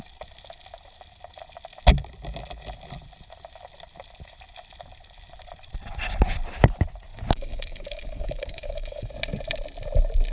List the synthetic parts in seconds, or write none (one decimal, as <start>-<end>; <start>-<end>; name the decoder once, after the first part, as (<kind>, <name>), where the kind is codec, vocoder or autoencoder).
7.1-9.1 (codec, DAC)